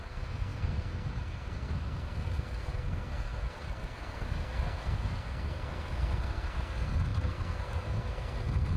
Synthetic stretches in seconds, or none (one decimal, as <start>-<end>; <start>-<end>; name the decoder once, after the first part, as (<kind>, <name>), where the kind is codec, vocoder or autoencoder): 0.0-8.8 (codec, SNAC)